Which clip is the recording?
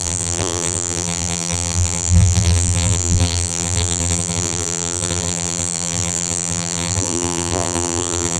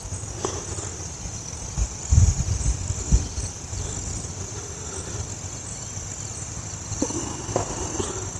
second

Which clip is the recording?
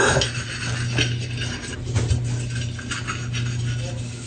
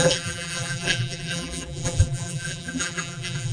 first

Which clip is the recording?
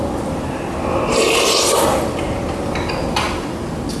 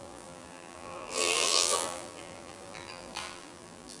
first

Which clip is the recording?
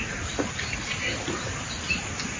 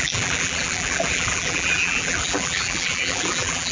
first